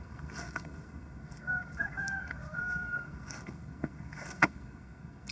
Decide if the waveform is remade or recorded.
remade